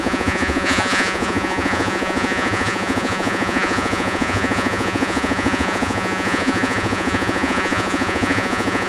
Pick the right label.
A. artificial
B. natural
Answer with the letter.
A